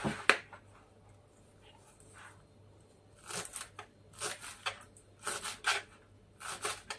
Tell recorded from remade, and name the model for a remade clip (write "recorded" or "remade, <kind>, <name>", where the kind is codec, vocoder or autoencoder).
recorded